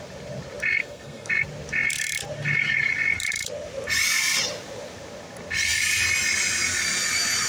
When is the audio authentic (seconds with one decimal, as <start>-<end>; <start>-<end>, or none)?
0.0-0.8; 1.3-7.5